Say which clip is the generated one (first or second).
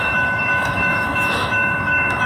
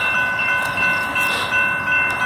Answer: first